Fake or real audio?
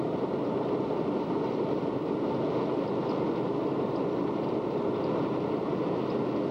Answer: real